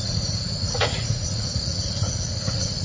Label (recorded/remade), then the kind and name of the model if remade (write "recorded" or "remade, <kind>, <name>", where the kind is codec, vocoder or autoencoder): remade, vocoder, Vocos